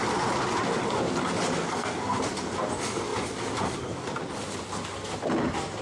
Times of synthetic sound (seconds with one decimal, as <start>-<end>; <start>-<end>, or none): 1.6-2.2